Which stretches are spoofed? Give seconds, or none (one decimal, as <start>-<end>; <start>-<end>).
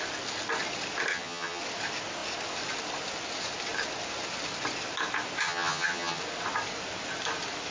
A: 1.1-1.6; 5.4-6.2